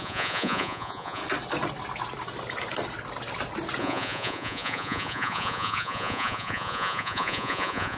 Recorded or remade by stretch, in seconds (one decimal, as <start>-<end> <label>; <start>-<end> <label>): 0.0-1.2 remade; 1.2-3.8 recorded; 3.8-8.0 remade

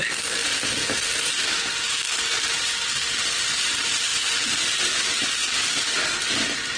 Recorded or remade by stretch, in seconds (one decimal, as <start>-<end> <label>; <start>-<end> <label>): 0.0-6.8 recorded

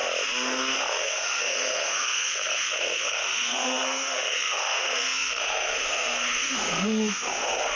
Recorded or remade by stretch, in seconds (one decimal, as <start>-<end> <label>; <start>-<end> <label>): 0.0-0.9 recorded; 0.9-7.8 remade

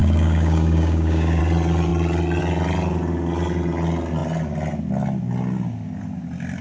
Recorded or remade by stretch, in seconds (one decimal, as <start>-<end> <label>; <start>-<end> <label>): 0.0-1.4 remade; 1.4-6.6 recorded